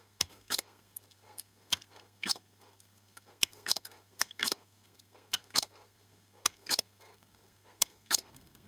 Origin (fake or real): fake